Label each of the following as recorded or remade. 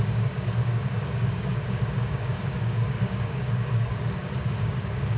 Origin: remade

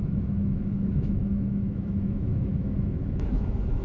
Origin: remade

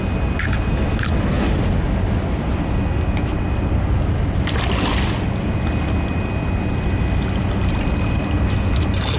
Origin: recorded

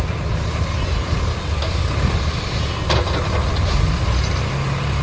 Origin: recorded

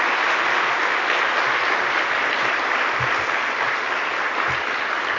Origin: recorded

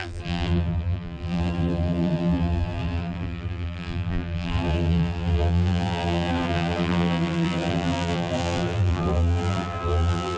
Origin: remade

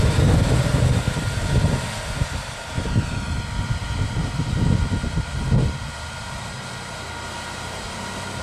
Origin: recorded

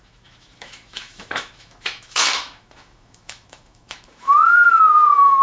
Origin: remade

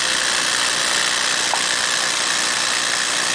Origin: recorded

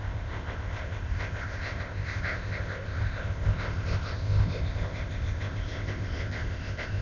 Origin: remade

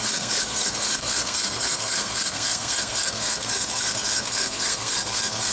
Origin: remade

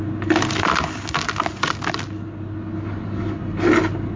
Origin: recorded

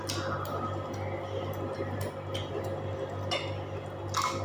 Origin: recorded